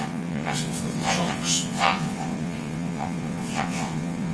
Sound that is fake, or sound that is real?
fake